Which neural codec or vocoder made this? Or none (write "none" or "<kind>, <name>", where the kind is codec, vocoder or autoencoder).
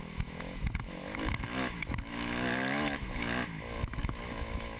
autoencoder, DAC-VAE